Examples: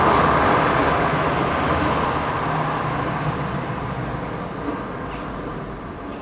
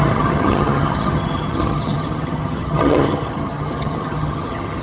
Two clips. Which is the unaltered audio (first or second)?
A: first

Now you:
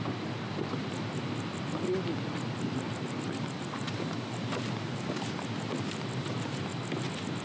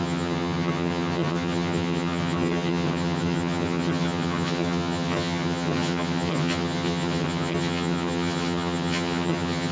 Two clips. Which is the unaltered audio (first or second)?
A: first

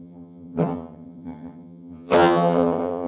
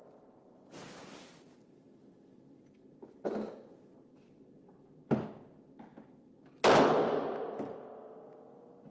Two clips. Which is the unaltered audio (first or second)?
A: second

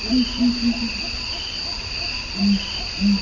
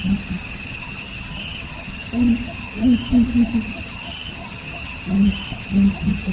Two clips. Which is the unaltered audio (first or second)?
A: first